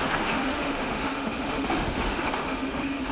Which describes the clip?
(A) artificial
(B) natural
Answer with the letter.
A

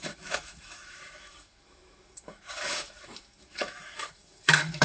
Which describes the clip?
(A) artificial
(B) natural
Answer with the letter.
A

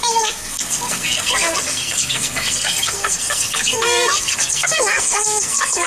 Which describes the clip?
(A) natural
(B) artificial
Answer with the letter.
B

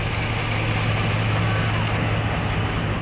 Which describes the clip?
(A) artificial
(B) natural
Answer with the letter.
B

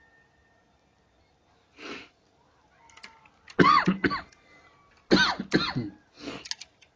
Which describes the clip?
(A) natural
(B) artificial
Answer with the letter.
A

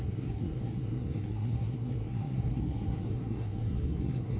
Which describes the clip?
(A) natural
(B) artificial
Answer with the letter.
B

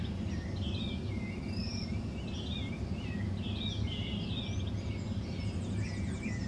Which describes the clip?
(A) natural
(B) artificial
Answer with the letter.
A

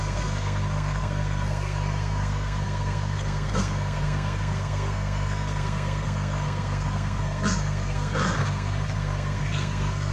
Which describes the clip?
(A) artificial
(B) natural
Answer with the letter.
A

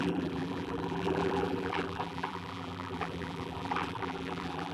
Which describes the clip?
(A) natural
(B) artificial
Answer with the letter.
B